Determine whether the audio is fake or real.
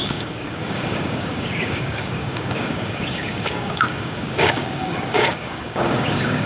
fake